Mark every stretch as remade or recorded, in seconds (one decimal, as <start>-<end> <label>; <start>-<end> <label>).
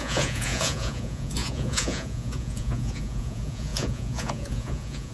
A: 0.0-5.1 remade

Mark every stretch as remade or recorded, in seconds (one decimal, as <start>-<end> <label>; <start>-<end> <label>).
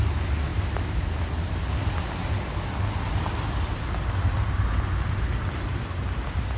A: 0.0-6.6 recorded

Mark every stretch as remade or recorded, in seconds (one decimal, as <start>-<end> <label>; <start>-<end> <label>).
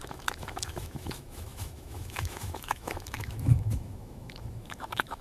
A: 0.0-5.2 remade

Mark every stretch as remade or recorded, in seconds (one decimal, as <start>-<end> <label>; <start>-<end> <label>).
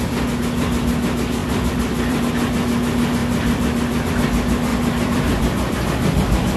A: 0.0-1.4 recorded; 1.4-2.2 remade; 2.2-3.2 recorded; 3.2-4.1 remade; 4.1-4.7 recorded; 4.7-6.6 remade